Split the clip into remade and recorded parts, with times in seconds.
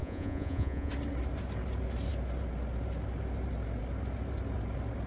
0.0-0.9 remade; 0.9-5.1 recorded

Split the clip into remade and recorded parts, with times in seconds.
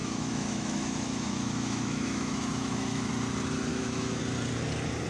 0.0-3.1 remade; 3.1-3.7 recorded; 3.7-4.2 remade; 4.2-5.1 recorded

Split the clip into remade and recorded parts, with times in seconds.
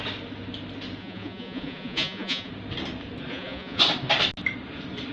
0.0-1.0 recorded; 1.0-2.5 remade; 2.5-3.3 recorded; 3.3-3.8 remade; 3.8-5.1 recorded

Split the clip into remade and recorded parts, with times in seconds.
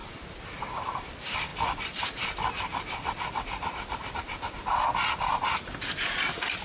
0.0-6.6 recorded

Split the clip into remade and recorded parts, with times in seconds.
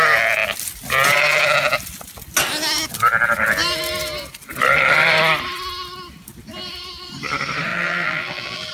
0.0-7.7 recorded; 7.7-8.7 remade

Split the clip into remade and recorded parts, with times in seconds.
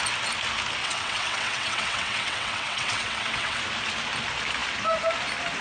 0.0-0.8 recorded; 0.8-3.6 remade; 3.6-5.6 recorded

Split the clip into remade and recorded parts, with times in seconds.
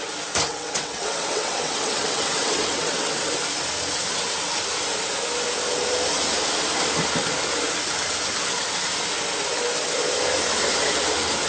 0.0-0.5 recorded; 0.5-3.3 remade; 3.3-11.5 recorded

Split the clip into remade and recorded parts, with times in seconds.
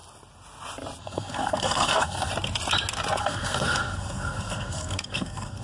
0.0-1.0 recorded; 1.0-2.3 remade; 2.3-3.2 recorded; 3.2-5.6 remade